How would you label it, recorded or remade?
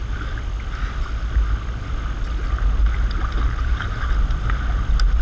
recorded